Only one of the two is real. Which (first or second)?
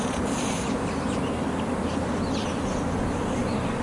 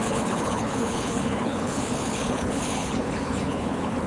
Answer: first